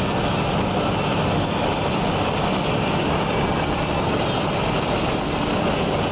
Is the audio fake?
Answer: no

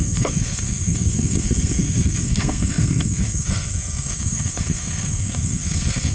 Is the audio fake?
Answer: yes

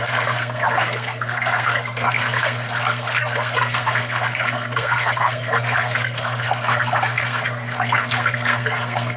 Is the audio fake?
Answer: yes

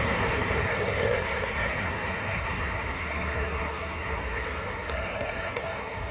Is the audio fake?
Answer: yes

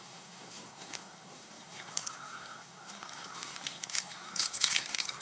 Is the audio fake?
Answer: yes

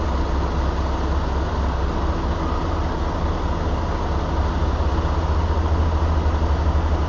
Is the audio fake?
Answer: no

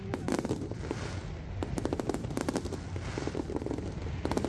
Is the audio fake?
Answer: no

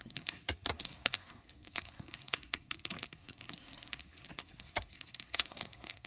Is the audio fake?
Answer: yes